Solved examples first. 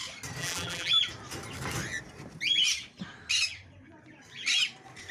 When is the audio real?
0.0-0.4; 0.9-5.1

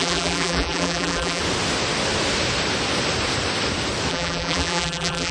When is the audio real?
1.4-4.1

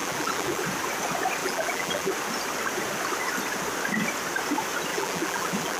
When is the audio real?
0.6-1.4; 2.1-4.9

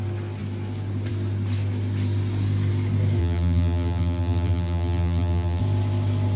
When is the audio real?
0.0-3.2; 5.6-6.4

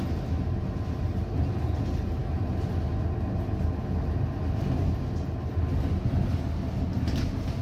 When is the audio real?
0.0-7.6

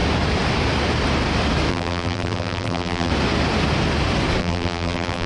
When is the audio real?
0.0-1.7; 3.1-4.4

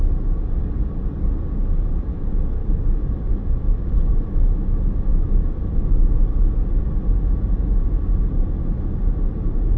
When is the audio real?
0.0-2.6; 4.0-5.1; 8.6-9.8